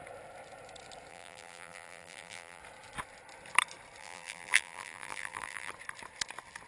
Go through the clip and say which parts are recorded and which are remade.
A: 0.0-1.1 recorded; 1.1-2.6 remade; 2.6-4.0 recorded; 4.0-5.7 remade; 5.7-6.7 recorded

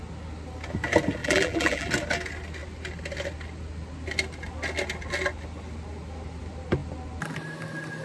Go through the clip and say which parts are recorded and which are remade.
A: 0.0-1.2 recorded; 1.2-1.9 remade; 1.9-8.0 recorded